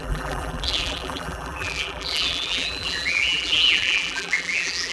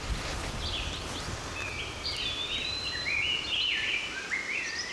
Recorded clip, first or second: second